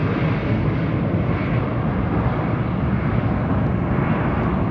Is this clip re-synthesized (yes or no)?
no